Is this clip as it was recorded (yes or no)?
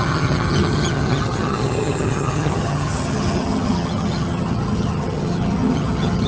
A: no